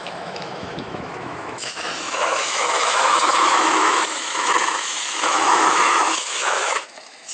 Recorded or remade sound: remade